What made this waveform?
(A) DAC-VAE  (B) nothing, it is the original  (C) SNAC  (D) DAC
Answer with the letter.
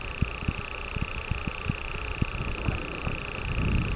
B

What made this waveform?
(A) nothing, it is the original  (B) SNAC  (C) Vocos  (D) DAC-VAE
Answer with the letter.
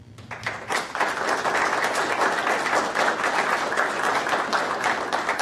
A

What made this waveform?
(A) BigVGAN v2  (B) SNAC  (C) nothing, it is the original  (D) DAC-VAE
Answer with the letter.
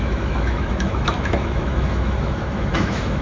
D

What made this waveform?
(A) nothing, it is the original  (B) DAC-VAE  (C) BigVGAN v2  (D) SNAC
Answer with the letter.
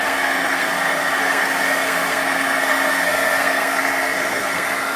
D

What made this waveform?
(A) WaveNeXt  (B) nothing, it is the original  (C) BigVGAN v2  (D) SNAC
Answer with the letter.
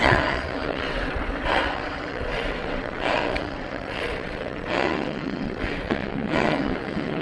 A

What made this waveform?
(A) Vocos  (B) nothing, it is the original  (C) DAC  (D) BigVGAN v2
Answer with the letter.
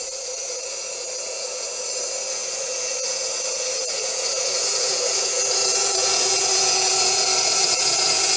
A